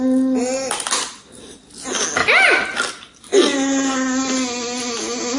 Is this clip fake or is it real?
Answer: real